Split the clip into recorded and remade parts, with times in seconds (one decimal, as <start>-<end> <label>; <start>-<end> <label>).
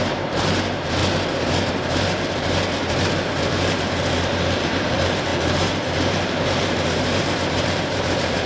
0.0-1.0 remade; 1.0-1.7 recorded; 1.7-8.5 remade